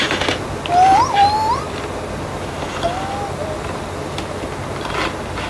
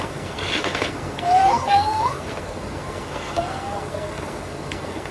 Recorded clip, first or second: first